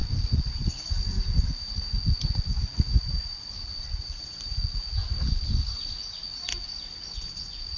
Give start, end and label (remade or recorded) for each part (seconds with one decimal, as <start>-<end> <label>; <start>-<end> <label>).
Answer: 0.0-7.8 recorded